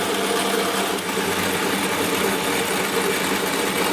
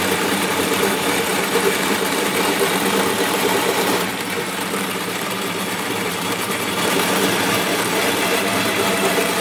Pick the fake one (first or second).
second